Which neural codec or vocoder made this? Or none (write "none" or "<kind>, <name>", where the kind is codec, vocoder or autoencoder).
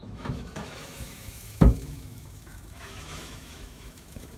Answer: autoencoder, DAC-VAE